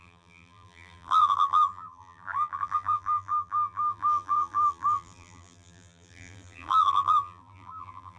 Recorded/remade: remade